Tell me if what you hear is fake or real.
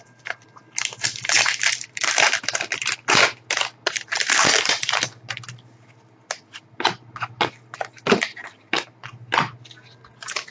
real